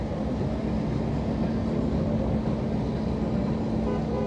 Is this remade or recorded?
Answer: recorded